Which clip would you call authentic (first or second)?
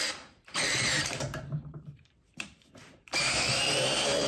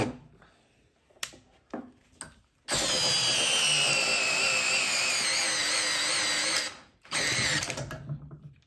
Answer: second